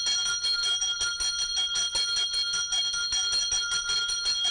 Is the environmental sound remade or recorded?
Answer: recorded